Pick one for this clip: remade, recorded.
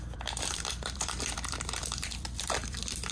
remade